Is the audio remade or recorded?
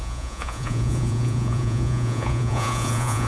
remade